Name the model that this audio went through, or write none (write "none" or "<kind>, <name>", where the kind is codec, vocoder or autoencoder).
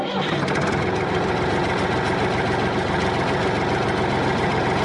none